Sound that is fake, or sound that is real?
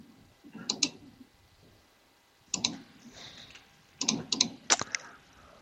real